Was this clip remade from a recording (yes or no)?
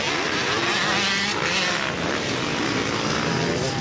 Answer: no